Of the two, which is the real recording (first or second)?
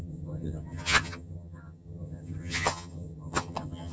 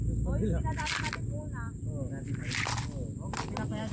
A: second